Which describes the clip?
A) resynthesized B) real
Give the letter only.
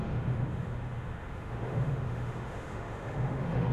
A